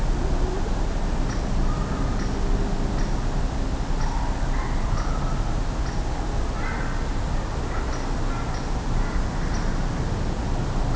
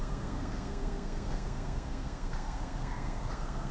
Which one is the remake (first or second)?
second